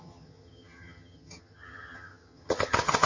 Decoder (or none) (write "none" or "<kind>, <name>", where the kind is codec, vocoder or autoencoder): vocoder, HiFi-GAN